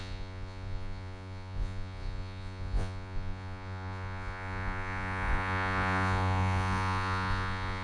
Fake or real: fake